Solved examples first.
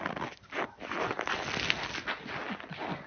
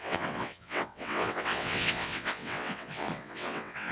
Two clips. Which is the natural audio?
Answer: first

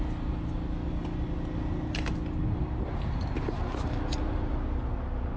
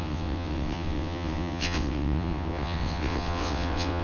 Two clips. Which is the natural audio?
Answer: first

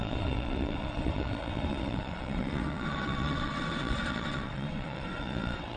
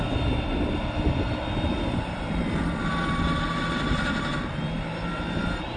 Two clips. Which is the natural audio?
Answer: second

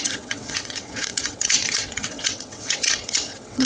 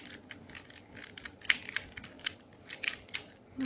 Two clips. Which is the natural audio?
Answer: second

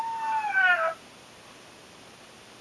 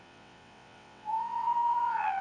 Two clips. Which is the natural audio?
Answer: first